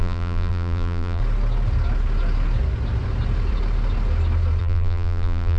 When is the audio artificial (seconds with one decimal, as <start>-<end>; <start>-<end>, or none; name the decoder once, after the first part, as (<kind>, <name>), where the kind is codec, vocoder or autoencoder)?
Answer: 0.0-1.2 (vocoder, BigVGAN v2); 4.6-5.6